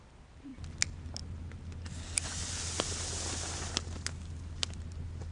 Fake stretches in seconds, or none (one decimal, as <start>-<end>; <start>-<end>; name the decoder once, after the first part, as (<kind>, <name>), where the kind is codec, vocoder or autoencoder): none